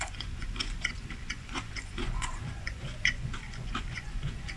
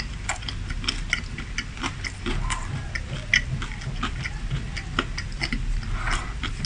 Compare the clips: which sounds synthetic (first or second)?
first